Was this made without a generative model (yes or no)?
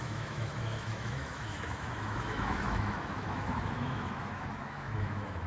no